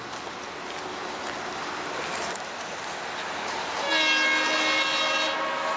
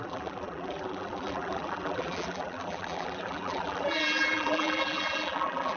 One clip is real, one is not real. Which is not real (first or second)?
second